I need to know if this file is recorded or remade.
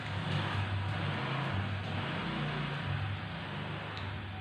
recorded